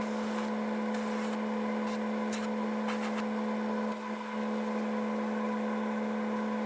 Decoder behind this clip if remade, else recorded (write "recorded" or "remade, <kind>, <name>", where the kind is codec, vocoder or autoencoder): recorded